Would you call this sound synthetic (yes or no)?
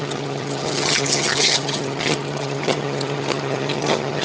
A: yes